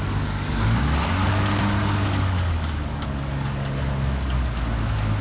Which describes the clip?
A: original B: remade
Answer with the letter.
B